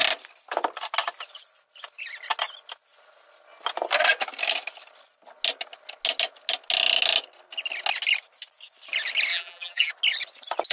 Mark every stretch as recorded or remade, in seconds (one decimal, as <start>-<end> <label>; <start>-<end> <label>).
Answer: 0.0-9.3 recorded; 9.3-9.9 remade; 9.9-10.7 recorded